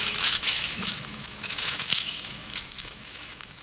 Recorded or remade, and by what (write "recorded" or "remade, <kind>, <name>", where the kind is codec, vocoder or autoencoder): remade, autoencoder, DAC-VAE